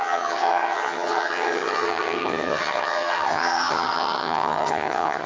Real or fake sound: fake